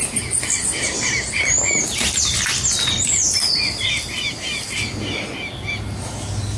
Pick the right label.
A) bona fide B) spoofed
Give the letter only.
A